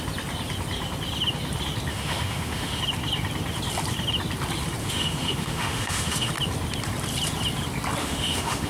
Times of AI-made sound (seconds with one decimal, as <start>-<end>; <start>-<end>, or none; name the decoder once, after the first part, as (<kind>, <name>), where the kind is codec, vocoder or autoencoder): 1.9-2.8 (autoencoder, DAC-VAE); 4.8-6.3; 8.0-8.7

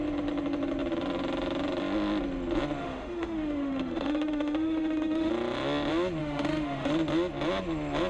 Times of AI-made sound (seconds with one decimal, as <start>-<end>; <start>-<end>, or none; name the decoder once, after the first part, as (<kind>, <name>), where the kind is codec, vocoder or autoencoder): 2.8-5.3 (autoencoder, DAC-VAE); 6.2-6.9

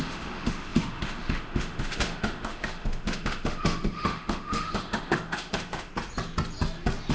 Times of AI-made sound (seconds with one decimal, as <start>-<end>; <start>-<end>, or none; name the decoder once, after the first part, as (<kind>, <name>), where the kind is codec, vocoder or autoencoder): 0.0-5.9 (autoencoder, DAC-VAE)

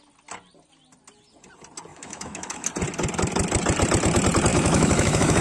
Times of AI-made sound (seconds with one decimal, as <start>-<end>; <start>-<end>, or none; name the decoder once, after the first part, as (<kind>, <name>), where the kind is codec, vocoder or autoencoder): 1.9-2.7 (autoencoder, DAC-VAE); 4.5-5.4